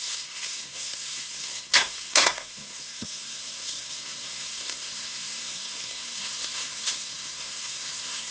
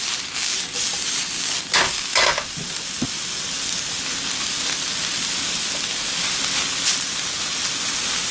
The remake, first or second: first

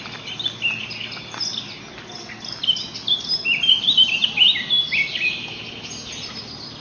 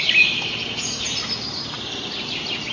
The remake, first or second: second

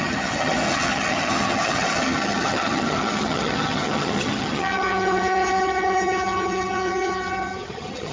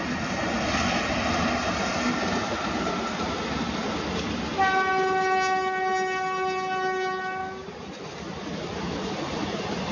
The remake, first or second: first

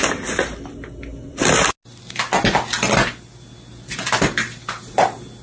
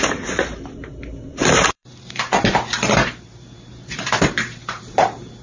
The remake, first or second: second